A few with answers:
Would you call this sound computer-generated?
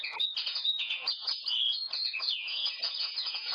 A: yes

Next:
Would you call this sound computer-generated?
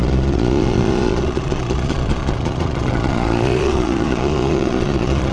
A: yes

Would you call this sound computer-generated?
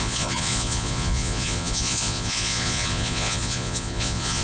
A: yes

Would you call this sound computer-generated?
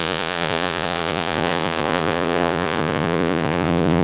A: yes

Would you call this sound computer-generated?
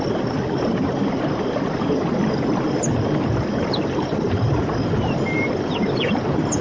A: no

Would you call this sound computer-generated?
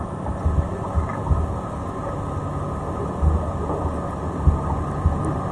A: no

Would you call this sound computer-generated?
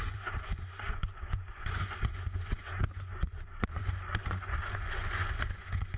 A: yes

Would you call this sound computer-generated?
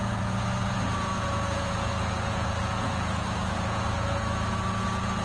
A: yes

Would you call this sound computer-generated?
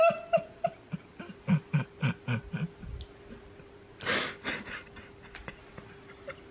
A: no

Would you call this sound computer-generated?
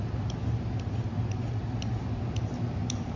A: no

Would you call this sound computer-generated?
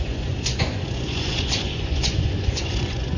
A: yes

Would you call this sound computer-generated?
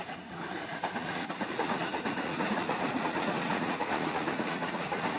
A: yes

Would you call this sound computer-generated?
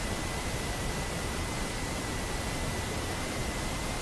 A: no